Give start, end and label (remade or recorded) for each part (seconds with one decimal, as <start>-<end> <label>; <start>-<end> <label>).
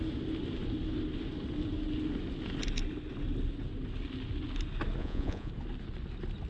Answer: 0.0-5.0 recorded; 5.0-5.5 remade; 5.5-6.5 recorded